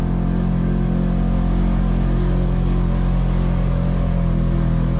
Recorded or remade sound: recorded